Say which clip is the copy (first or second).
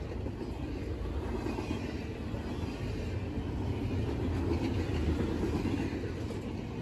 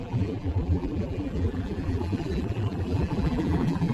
second